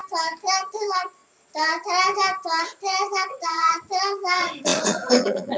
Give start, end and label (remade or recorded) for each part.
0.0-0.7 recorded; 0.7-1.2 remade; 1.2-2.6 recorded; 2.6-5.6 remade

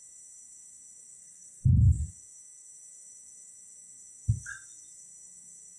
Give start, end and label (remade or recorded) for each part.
0.0-1.2 recorded; 1.2-2.1 remade; 2.1-5.8 recorded

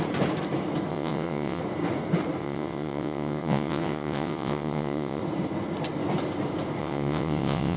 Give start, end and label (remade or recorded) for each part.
0.0-0.9 recorded; 0.9-1.6 remade; 1.6-2.4 recorded; 2.4-5.2 remade; 5.2-6.8 recorded; 6.8-7.8 remade

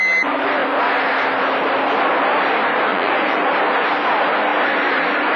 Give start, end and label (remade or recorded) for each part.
0.0-2.9 recorded; 2.9-3.5 remade; 3.5-5.4 recorded

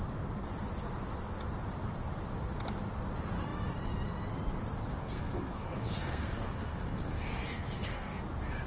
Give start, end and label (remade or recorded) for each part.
0.0-5.0 recorded; 5.0-8.2 remade; 8.2-8.7 recorded

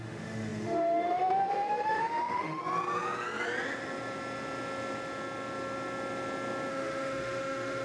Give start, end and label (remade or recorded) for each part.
0.0-2.6 remade; 2.6-6.7 recorded; 6.7-7.8 remade

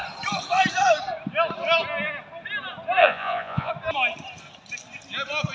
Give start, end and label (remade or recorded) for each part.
0.0-3.0 recorded; 3.0-3.7 remade; 3.7-5.5 recorded